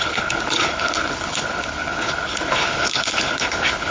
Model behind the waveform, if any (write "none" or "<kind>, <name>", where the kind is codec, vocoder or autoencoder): codec, HILCodec